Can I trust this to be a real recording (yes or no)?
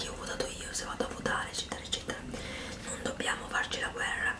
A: yes